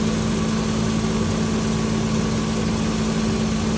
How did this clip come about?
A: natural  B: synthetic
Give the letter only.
A